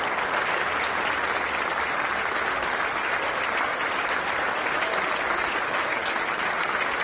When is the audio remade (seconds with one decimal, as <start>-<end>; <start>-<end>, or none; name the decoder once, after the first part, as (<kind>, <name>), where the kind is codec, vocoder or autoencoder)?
3.7-4.7 (vocoder, BigVGAN v2)